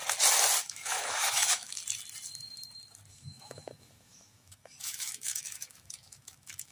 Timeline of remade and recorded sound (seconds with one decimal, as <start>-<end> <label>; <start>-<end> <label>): 0.0-0.6 recorded; 0.6-1.8 remade; 1.8-3.1 recorded; 3.1-6.7 remade